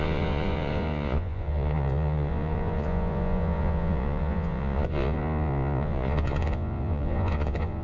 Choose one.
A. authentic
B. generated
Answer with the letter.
B